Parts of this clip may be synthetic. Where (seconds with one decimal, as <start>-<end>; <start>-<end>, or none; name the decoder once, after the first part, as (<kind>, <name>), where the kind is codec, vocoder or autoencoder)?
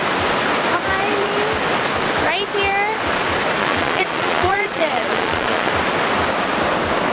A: 3.6-5.7 (vocoder, Vocos)